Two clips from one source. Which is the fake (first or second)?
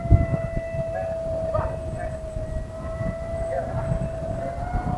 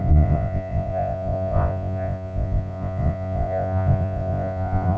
second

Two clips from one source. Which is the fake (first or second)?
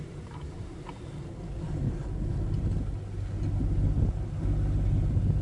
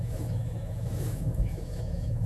second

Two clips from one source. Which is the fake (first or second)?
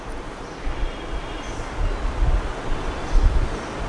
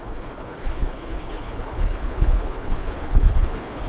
second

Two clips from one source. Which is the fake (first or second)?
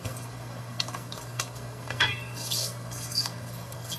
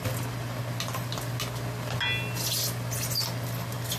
first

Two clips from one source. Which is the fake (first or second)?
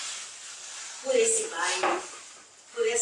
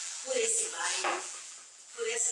second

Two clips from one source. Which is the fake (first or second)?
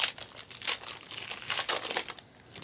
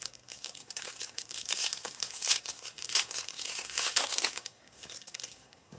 second